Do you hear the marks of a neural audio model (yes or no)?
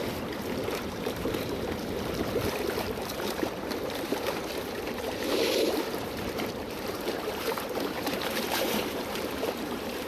yes